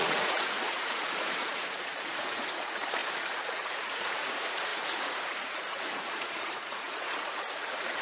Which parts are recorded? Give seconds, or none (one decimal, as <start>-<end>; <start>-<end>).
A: none